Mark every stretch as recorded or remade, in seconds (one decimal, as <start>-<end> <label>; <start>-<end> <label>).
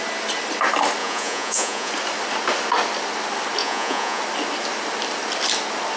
0.0-1.0 recorded; 1.0-1.9 remade; 1.9-3.6 recorded; 3.6-4.2 remade; 4.2-6.0 recorded